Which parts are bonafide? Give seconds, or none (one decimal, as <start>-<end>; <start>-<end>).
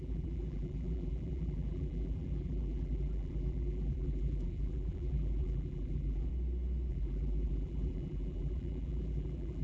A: 6.3-6.9